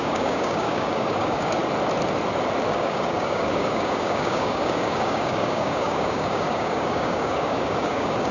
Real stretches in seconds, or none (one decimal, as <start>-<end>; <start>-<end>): 1.6-2.7

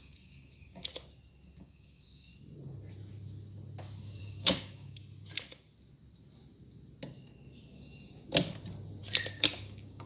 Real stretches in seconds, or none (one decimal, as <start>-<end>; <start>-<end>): 0.9-1.6; 2.3-4.2; 5.0-9.3

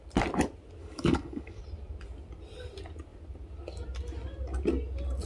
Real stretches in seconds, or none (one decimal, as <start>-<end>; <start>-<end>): 0.0-0.8; 1.6-5.3

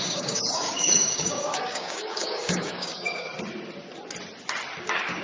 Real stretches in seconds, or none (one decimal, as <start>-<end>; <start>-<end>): 3.3-4.8

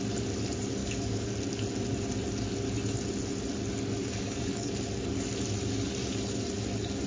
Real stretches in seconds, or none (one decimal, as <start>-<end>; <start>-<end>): 0.0-0.8; 1.3-4.0; 4.7-7.1

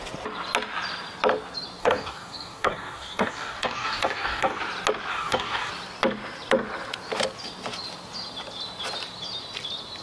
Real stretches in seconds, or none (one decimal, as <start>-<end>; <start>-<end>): 0.0-1.8; 4.6-5.1; 5.7-10.0

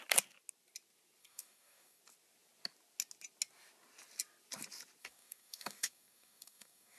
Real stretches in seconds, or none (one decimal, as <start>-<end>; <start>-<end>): 0.0-1.2; 2.0-5.0